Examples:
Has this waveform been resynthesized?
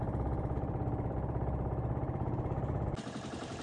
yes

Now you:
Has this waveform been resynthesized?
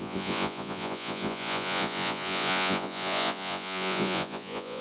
yes